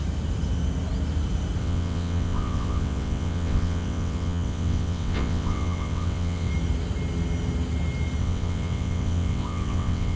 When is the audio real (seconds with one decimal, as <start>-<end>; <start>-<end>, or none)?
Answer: 0.0-1.6; 6.5-8.2